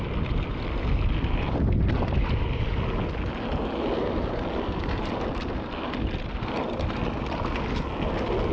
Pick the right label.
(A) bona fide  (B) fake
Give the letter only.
A